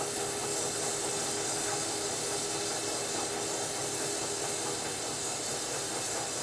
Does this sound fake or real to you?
real